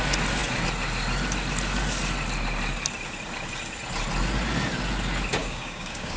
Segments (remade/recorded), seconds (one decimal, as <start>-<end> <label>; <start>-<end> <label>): 0.0-5.4 recorded; 5.4-6.2 remade